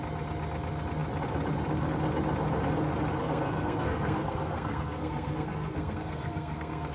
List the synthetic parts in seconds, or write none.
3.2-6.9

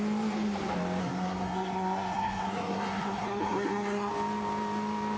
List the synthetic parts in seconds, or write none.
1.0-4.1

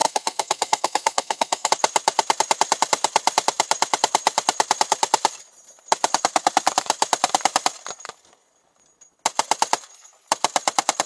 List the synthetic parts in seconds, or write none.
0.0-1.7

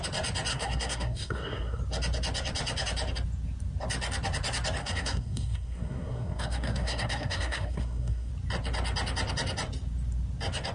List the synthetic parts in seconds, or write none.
0.5-1.8; 4.8-8.3